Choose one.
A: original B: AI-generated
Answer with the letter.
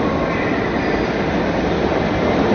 A